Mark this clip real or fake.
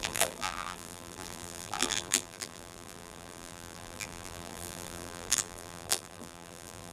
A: fake